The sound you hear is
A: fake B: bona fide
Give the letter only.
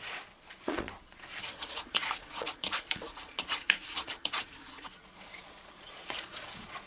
A